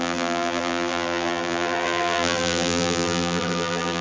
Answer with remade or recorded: remade